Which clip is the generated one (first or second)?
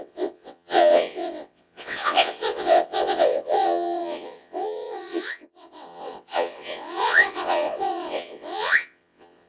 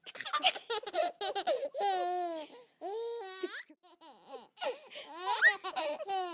first